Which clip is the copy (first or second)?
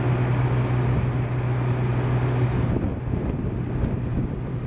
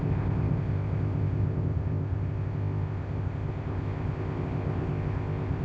second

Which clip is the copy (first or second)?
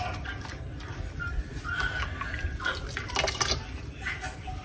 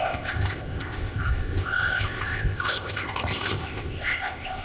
second